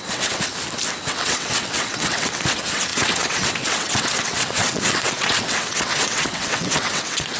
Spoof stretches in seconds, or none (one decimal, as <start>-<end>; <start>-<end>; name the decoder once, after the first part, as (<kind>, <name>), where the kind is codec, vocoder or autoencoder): 0.0-0.5 (vocoder, WaveNeXt); 1.0-7.4